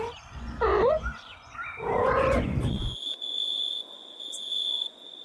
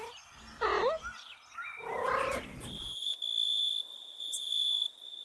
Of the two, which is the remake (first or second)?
first